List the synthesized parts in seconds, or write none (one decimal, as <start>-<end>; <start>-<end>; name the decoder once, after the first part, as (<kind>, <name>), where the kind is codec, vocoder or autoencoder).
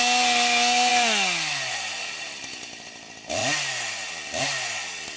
none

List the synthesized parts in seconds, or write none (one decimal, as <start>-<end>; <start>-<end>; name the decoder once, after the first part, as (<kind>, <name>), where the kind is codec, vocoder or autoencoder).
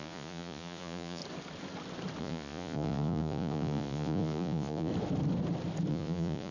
0.0-1.2 (vocoder, Vocos); 2.2-4.9; 5.9-6.5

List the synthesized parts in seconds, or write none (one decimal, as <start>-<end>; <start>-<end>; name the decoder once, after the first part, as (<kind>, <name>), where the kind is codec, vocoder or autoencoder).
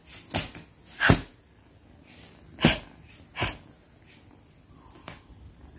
none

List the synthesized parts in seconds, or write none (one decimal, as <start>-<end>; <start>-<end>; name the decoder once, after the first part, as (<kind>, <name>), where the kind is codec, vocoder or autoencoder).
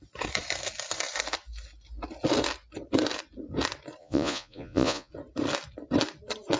4.0-5.1 (vocoder, Vocos)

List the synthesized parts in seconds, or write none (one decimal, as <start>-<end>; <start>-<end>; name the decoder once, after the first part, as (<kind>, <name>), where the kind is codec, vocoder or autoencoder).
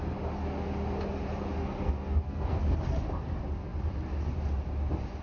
1.6-2.6 (codec, SNAC)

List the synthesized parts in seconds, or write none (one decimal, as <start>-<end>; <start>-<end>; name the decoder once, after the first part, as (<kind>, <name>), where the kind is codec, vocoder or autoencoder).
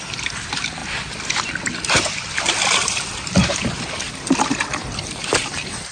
0.0-0.8 (vocoder, BigVGAN v2); 4.1-5.9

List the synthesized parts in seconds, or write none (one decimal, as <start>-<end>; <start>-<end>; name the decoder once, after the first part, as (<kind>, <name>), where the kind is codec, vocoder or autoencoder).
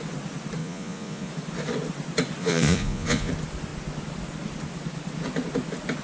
0.6-1.3 (vocoder, Vocos); 2.4-3.3